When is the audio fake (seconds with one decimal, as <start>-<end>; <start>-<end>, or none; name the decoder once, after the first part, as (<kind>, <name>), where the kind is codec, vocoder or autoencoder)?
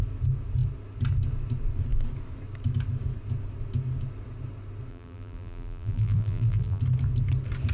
4.9-6.8 (vocoder, BigVGAN v2)